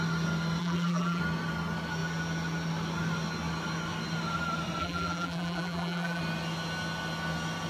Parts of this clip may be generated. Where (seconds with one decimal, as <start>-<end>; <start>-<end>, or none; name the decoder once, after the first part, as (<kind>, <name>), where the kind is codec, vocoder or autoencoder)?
0.6-1.2 (vocoder, BigVGAN v2); 4.8-6.2